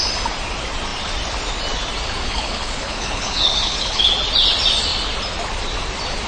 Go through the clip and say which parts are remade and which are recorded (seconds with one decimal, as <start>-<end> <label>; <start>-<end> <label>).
0.0-2.2 recorded; 2.2-4.1 remade; 4.1-6.3 recorded